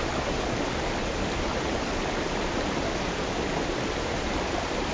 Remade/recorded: recorded